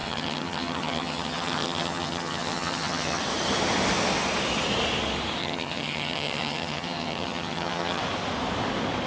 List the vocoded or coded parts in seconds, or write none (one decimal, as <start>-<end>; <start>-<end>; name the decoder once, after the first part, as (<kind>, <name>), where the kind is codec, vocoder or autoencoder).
0.0-3.2 (vocoder, HiFi-GAN); 5.4-8.0